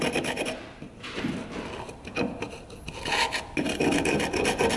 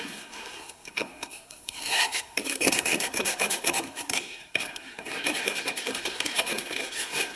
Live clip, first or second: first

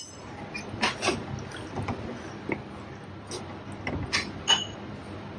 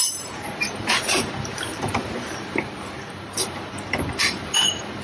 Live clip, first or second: first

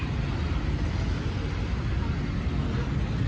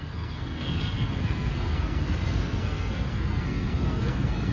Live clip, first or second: first